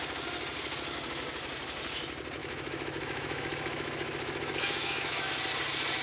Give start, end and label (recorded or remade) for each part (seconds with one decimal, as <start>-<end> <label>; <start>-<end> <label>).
0.0-2.4 recorded; 2.4-5.3 remade; 5.3-6.0 recorded